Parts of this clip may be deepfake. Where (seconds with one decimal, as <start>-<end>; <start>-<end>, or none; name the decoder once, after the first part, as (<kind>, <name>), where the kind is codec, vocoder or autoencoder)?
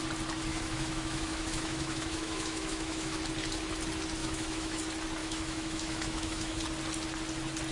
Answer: 0.5-3.2 (autoencoder, DAC-VAE); 4.2-4.8; 5.2-6.6